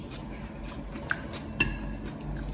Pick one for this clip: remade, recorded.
recorded